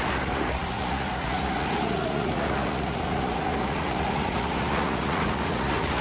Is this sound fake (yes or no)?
yes